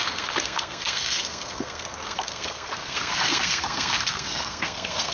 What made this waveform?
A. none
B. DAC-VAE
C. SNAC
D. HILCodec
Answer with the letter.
C